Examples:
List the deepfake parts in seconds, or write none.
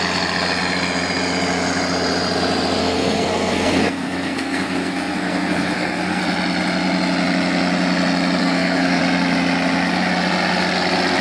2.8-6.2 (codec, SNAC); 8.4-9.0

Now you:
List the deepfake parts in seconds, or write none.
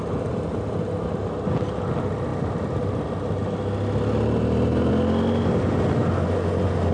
none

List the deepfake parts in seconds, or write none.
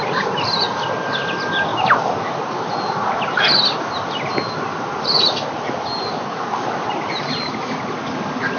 none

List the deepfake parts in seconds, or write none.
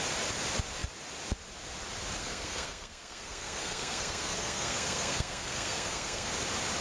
2.2-6.3 (codec, SNAC)